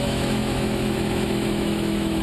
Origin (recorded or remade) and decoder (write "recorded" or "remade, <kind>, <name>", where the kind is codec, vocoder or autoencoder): remade, autoencoder, DAC-VAE